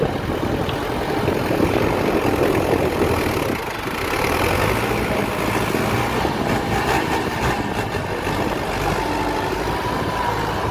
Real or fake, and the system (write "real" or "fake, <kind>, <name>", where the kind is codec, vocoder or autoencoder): real